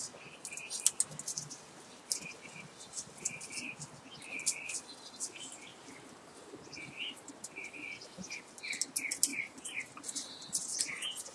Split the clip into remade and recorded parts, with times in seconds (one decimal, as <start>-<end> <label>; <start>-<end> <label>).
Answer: 0.0-5.7 recorded; 5.7-7.8 remade; 7.8-9.3 recorded; 9.3-10.8 remade; 10.8-11.3 recorded